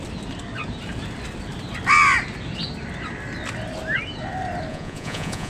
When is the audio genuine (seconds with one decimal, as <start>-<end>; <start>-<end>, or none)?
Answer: 0.0-4.7